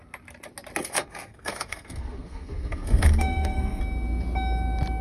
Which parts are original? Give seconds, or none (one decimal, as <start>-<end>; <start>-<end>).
0.0-0.8; 3.8-5.0